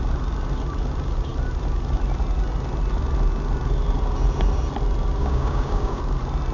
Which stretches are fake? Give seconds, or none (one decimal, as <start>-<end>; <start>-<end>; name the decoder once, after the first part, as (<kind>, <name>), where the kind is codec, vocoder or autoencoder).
5.2-6.0 (codec, DAC)